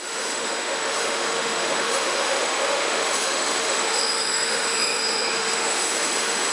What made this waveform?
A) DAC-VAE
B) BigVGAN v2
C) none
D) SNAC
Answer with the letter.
A